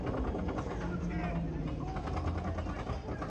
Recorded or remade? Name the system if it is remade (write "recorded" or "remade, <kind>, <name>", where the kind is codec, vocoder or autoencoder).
recorded